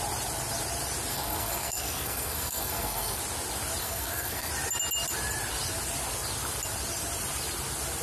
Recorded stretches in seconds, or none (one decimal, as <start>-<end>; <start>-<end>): 0.0-1.1; 3.2-3.8; 4.5-8.0